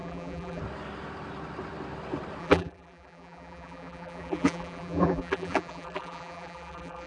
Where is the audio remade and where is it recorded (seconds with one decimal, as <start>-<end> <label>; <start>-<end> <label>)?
0.0-0.6 remade; 0.6-2.4 recorded; 2.4-7.1 remade